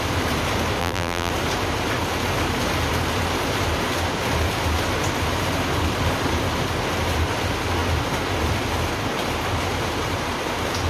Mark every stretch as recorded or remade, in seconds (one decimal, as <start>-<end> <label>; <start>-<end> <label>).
0.0-0.8 recorded; 0.8-1.3 remade; 1.3-10.9 recorded